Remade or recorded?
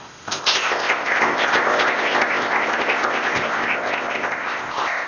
remade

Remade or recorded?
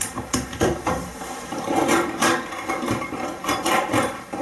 remade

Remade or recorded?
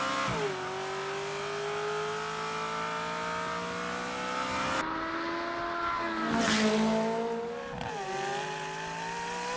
recorded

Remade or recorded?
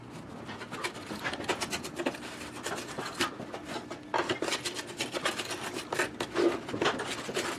recorded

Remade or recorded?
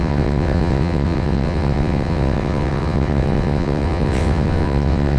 remade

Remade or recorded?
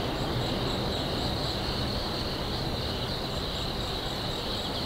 recorded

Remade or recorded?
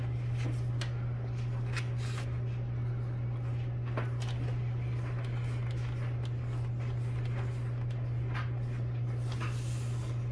recorded